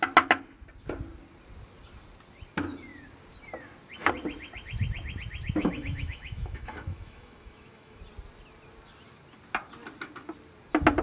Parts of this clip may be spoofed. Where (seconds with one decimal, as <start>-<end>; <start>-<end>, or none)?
5.6-8.0